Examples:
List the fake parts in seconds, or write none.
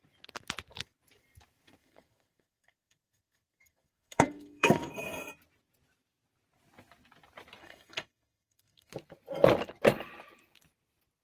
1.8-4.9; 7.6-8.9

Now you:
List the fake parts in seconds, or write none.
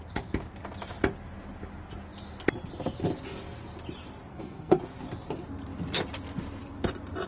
4.3-4.8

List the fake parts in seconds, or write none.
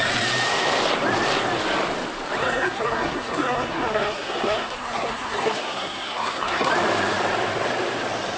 2.4-6.7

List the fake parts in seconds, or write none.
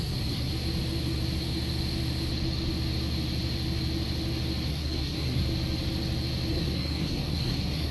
0.0-0.5; 4.7-5.4; 6.5-7.9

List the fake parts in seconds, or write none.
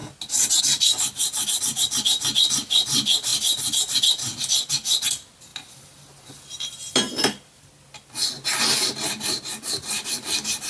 none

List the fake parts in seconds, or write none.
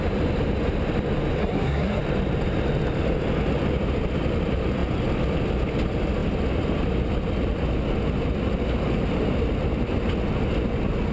1.4-2.0